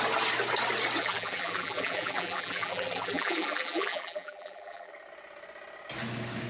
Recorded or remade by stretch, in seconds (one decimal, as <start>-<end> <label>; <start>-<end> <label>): 0.0-1.0 recorded; 1.0-4.9 remade; 4.9-6.5 recorded